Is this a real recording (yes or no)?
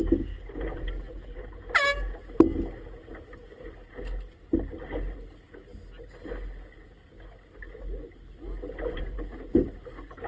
yes